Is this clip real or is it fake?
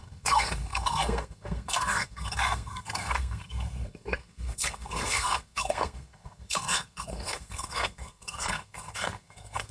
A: fake